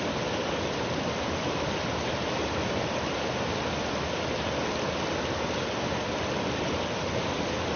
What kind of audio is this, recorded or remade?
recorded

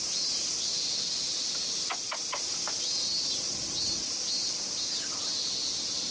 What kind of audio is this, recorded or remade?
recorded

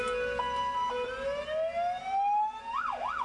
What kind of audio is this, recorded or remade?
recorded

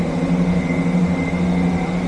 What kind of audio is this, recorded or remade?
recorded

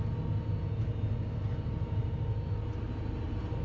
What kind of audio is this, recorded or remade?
recorded